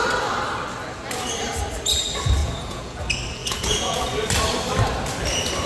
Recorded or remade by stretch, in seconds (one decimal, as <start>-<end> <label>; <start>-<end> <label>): 0.0-2.4 recorded; 2.4-3.0 remade; 3.0-3.4 recorded; 3.4-4.0 remade; 4.0-5.7 recorded